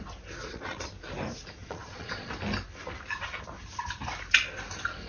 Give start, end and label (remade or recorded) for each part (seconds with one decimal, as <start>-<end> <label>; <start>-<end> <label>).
0.0-0.4 recorded; 0.4-0.9 remade; 0.9-1.6 recorded; 1.6-2.3 remade; 2.3-5.1 recorded